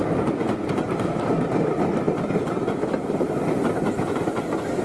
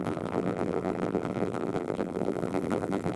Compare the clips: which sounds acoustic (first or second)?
first